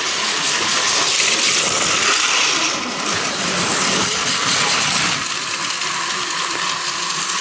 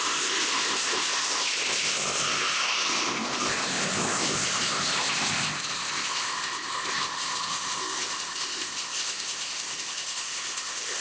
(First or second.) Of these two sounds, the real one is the first